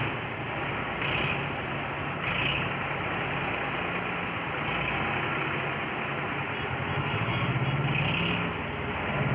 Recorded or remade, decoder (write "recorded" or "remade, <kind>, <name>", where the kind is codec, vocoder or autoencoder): recorded